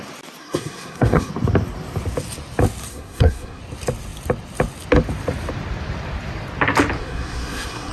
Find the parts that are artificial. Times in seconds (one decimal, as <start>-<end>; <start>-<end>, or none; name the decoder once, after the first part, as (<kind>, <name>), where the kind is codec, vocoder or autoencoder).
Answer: 0.4-1.3 (codec, SNAC); 2.9-3.6; 7.0-7.9